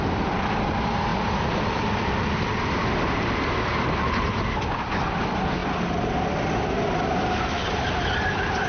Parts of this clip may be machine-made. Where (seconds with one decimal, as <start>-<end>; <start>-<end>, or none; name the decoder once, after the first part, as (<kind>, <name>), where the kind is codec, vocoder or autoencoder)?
none